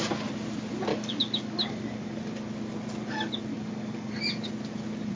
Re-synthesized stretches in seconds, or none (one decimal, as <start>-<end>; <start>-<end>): 0.9-2.2; 3.5-4.1